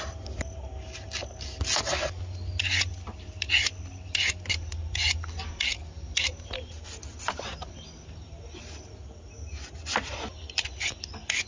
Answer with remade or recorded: recorded